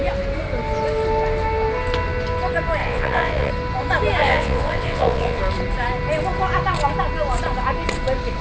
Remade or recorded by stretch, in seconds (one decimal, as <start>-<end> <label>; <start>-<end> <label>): 0.0-2.8 recorded; 2.8-3.5 remade; 3.5-4.2 recorded; 4.2-5.4 remade; 5.4-8.4 recorded